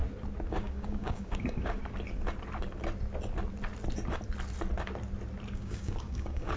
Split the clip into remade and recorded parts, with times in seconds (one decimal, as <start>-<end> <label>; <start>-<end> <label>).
0.0-0.5 recorded; 0.5-1.8 remade; 1.8-5.5 recorded; 5.5-6.6 remade

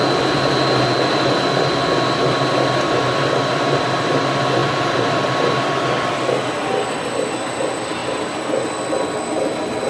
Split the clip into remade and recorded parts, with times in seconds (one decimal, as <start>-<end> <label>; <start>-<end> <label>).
0.0-0.5 remade; 0.5-4.6 recorded; 4.6-6.1 remade; 6.1-9.9 recorded